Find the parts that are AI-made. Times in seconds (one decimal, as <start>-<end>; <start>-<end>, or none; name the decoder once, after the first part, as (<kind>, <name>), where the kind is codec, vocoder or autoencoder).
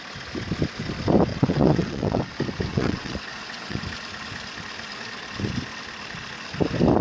1.3-2.2 (vocoder, WaveNeXt); 2.7-3.8